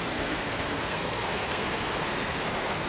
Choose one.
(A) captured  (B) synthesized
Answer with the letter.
B